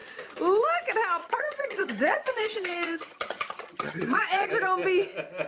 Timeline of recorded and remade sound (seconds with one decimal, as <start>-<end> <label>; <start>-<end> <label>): 0.0-1.2 recorded; 1.2-4.5 remade; 4.5-5.5 recorded